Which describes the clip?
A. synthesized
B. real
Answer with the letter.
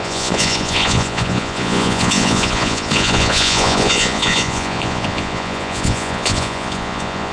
A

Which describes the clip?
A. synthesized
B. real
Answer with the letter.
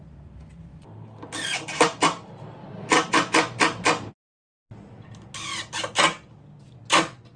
B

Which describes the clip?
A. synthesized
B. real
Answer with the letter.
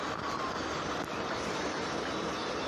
B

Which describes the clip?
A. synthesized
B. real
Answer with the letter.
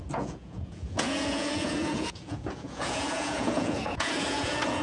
A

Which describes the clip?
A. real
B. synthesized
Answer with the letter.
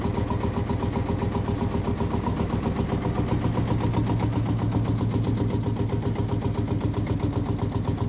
A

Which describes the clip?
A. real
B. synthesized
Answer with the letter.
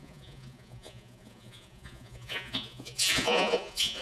B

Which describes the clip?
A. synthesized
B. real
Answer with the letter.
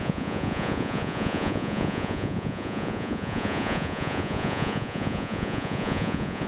A